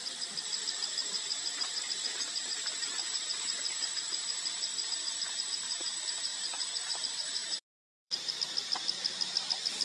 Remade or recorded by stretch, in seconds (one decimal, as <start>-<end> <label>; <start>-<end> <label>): 0.0-1.0 recorded; 1.0-1.9 remade; 1.9-7.4 recorded; 7.4-8.3 remade; 8.3-9.8 recorded